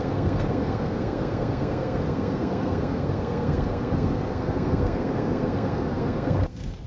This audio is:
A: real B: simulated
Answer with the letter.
B